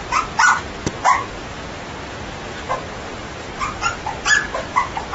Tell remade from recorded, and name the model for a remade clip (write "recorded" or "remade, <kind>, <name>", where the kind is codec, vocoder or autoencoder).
recorded